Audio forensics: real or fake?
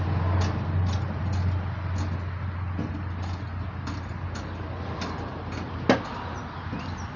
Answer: real